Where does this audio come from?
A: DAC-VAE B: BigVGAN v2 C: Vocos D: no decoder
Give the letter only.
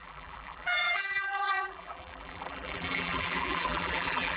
B